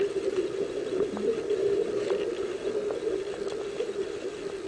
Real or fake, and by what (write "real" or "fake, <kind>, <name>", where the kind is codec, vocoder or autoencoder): real